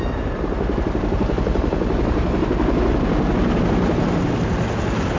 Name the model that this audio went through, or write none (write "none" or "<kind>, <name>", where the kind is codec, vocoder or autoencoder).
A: none